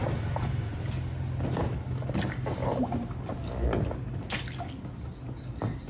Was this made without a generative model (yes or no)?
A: yes